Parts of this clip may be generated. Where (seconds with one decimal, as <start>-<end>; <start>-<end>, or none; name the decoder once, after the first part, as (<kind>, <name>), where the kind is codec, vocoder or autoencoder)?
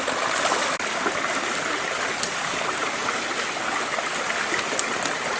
none